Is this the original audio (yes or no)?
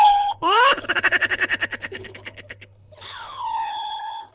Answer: no